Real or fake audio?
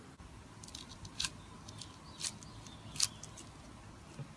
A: real